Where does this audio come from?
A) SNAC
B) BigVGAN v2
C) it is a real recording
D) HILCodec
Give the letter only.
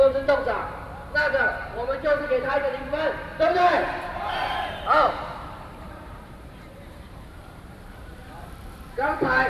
B